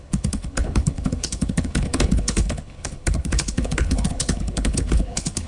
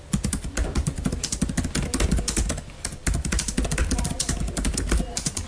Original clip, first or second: second